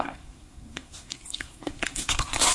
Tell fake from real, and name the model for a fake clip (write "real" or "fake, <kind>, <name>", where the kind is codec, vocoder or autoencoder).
fake, codec, SNAC